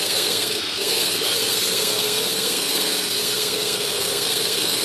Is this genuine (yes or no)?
no